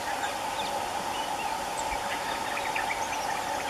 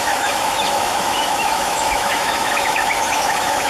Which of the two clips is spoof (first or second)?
second